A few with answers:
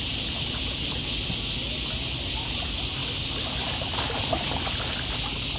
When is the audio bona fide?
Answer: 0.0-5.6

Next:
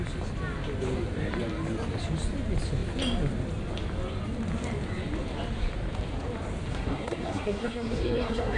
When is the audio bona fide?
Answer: 0.0-6.7

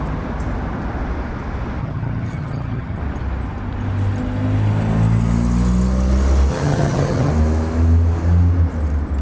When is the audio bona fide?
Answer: 0.0-1.8; 3.0-6.5; 7.3-9.2

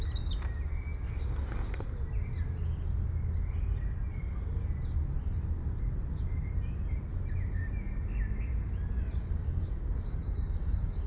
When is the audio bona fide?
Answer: 0.0-9.2

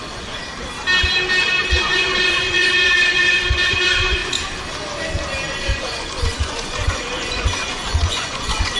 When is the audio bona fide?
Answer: 0.4-1.7; 4.2-5.5

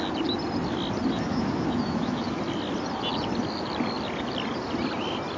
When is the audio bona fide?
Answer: 0.0-1.3; 2.4-5.4

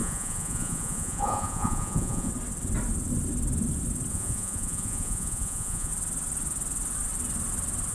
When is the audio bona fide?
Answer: 2.3-4.1; 5.9-7.9